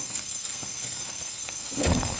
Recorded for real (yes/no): no